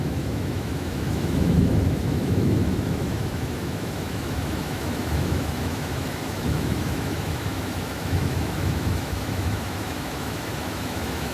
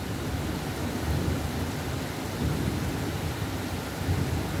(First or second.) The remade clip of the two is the first